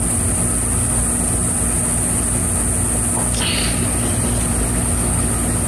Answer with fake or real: real